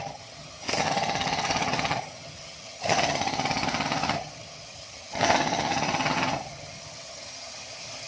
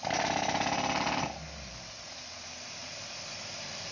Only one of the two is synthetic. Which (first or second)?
first